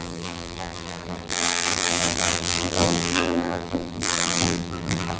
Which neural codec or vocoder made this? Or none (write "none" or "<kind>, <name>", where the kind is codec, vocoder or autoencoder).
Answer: vocoder, BigVGAN v2